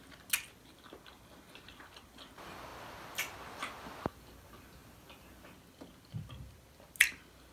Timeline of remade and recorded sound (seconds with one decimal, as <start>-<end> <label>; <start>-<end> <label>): 0.0-7.5 recorded